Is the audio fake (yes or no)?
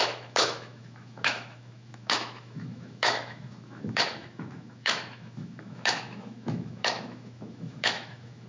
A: yes